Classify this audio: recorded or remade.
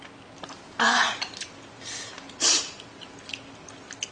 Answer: recorded